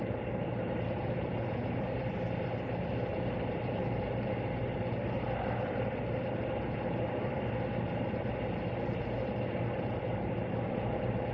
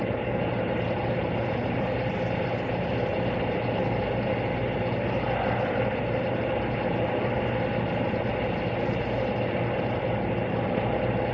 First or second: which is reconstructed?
first